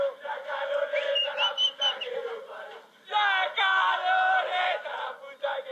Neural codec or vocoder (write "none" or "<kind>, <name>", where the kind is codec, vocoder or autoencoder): none